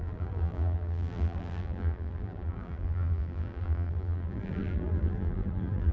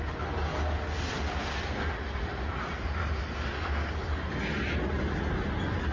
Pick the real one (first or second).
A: second